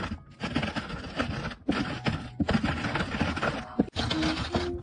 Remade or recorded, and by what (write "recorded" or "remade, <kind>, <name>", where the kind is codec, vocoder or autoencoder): recorded